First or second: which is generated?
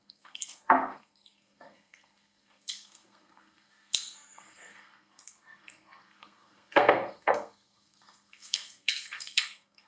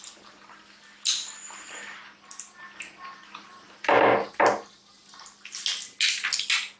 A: first